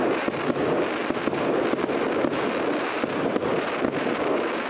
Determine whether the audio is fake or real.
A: real